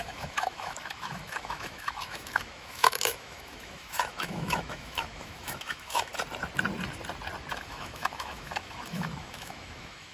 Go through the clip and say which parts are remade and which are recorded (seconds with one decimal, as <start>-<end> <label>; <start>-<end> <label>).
0.0-6.1 remade; 6.1-7.5 recorded; 7.5-10.1 remade

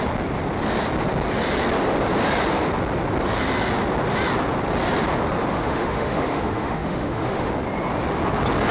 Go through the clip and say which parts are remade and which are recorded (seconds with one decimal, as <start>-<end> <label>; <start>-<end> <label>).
0.0-5.5 recorded; 5.5-7.5 remade; 7.5-8.7 recorded

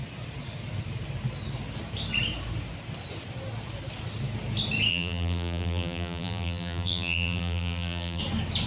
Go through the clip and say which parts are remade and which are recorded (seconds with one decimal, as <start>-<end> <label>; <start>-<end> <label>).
0.0-4.9 recorded; 4.9-8.2 remade; 8.2-8.7 recorded

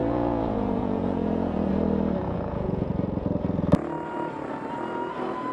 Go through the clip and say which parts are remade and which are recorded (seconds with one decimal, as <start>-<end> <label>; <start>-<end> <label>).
0.0-1.7 remade; 1.7-2.2 recorded; 2.2-2.9 remade; 2.9-5.5 recorded

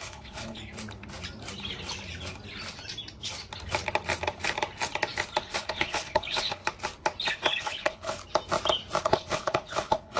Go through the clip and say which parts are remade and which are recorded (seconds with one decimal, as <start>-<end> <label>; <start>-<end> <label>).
0.0-0.6 remade; 0.6-5.4 recorded; 5.4-6.6 remade; 6.6-7.3 recorded; 7.3-8.2 remade; 8.2-9.0 recorded; 9.0-10.2 remade

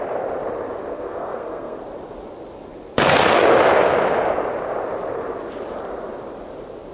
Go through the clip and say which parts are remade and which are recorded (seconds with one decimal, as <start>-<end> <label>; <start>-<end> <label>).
0.0-0.9 recorded; 0.9-1.8 remade; 1.8-6.9 recorded

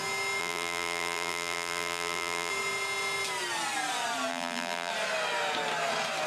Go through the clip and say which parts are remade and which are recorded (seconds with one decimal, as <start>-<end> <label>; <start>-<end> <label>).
0.0-0.4 recorded; 0.4-2.5 remade; 2.5-4.3 recorded; 4.3-4.9 remade; 4.9-6.3 recorded